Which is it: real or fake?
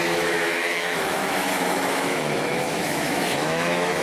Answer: fake